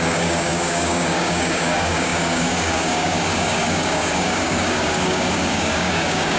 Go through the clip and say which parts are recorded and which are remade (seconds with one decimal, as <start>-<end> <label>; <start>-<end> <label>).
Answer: 0.0-6.4 remade